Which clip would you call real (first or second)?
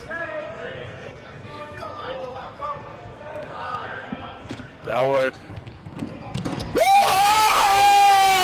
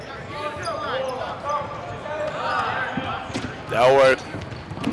second